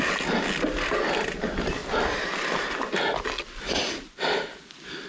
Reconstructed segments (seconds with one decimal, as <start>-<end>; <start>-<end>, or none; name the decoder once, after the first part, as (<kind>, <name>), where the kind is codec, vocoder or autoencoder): none